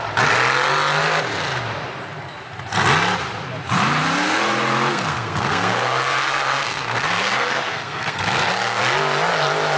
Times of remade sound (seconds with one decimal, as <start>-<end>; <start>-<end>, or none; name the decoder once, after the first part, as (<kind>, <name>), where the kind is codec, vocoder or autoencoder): 4.9-8.8 (codec, SNAC)